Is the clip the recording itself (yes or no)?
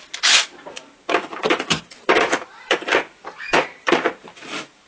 no